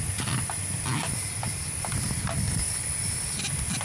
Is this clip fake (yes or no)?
no